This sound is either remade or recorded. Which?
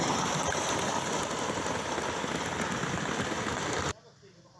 recorded